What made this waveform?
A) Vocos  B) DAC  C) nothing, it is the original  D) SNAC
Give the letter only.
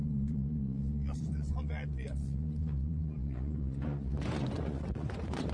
A